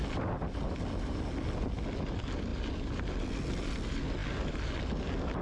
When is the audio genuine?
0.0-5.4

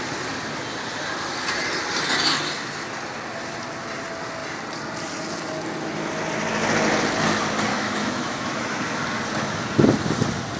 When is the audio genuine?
0.0-7.7; 9.0-10.6

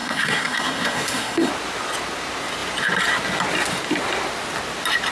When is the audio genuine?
1.5-5.1

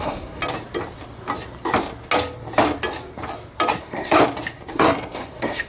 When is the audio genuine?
0.4-3.8; 4.2-4.7

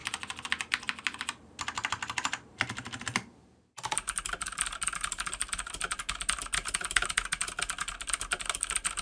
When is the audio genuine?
0.0-9.0

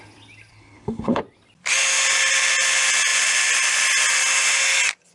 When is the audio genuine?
0.0-0.5; 1.2-5.1

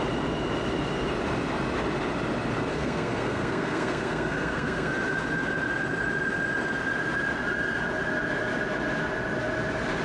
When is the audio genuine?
0.0-2.7; 4.9-10.0

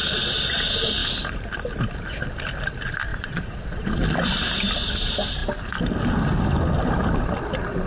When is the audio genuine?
0.6-3.1; 4.0-7.9